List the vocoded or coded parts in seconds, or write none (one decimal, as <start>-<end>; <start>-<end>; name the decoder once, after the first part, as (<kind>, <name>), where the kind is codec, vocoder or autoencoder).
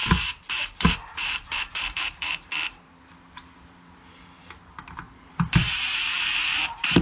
0.0-2.3 (vocoder, BigVGAN v2); 5.5-7.0